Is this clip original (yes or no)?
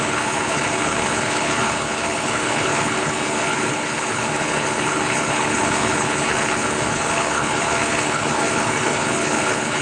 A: no